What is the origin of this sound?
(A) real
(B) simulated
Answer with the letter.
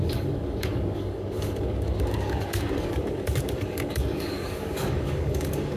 B